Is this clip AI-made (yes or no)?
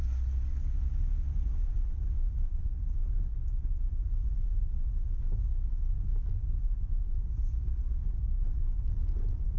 no